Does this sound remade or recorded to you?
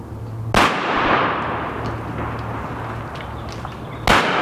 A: recorded